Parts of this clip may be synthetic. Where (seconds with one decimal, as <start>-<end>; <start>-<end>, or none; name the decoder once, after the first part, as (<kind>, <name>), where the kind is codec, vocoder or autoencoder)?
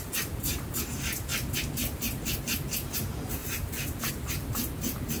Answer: none